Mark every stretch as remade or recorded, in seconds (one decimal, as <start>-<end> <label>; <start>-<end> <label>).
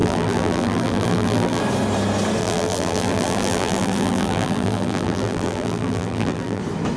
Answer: 0.0-1.6 remade; 1.6-2.4 recorded; 2.4-6.6 remade; 6.6-7.0 recorded